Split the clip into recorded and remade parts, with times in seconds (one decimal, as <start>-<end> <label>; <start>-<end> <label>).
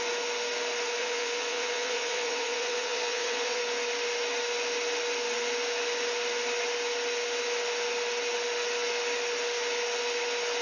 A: 0.0-1.0 recorded; 1.0-3.6 remade; 3.6-10.6 recorded